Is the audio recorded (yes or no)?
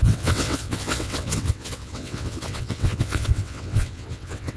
no